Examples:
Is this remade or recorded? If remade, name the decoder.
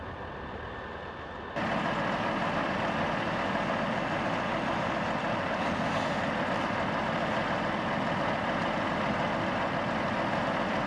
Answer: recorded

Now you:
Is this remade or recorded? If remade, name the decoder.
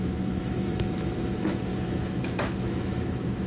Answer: remade, autoencoder, DAC-VAE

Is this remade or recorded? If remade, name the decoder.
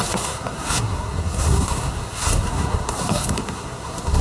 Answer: remade, codec, SNAC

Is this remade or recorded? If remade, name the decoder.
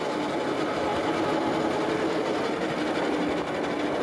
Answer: recorded